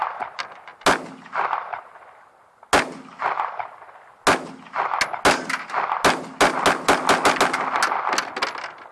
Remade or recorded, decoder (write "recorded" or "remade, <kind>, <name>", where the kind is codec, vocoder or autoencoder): recorded